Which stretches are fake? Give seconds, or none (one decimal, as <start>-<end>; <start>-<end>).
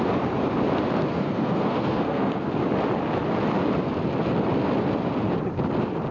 1.1-2.5